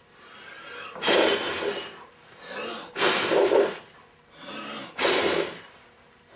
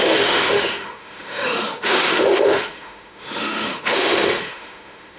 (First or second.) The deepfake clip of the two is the second